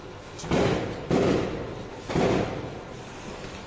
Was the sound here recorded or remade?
remade